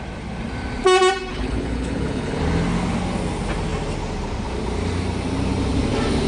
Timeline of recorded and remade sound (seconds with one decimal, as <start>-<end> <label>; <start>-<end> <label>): 0.0-1.3 recorded; 1.3-2.4 remade; 2.4-6.3 recorded